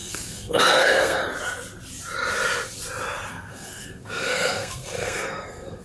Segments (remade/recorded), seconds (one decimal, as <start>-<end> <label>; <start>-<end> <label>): 0.0-1.2 remade; 1.2-3.3 recorded; 3.3-5.8 remade